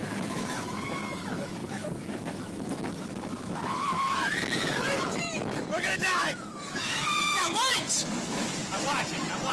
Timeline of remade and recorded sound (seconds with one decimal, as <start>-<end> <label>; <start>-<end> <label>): 0.0-8.6 remade; 8.6-9.5 recorded